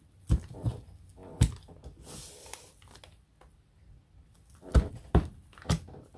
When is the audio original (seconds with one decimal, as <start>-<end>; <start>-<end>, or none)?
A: 0.0-6.2